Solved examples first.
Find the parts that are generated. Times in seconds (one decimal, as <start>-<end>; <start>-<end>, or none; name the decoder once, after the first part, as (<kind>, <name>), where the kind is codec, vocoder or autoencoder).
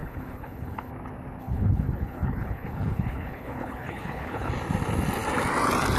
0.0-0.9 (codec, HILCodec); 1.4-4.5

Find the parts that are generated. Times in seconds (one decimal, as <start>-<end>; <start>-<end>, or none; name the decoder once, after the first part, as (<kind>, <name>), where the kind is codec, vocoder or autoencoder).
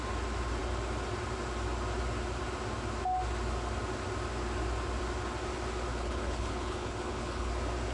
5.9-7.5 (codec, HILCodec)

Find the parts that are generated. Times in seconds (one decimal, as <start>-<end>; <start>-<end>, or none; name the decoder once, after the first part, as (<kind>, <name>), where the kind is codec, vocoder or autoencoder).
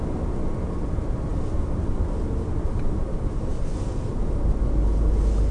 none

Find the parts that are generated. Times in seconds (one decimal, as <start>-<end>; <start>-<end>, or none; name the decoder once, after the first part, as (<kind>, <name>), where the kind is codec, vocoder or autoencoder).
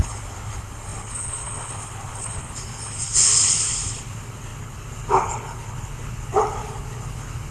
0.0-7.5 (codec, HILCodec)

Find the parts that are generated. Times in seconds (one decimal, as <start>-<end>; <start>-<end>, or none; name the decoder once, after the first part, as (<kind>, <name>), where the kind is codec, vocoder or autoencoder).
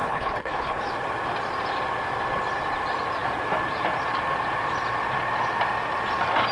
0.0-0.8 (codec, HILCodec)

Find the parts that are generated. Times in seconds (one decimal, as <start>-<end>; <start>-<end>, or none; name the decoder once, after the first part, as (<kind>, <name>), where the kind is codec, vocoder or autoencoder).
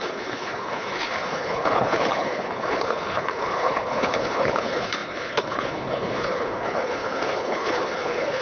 0.0-8.4 (codec, HILCodec)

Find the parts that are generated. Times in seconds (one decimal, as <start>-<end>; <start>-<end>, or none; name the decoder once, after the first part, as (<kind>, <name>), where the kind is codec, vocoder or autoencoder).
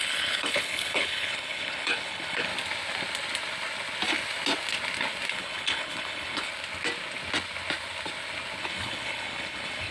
0.0-2.5 (codec, HILCodec); 5.3-6.5; 8.6-9.9